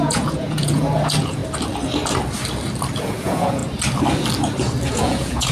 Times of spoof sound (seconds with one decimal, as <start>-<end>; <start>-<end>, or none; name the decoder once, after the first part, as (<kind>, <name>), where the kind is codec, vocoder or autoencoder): 0.0-1.4 (vocoder, Vocos); 3.0-3.6; 4.9-5.5